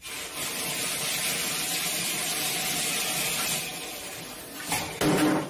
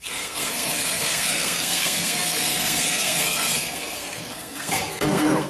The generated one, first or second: second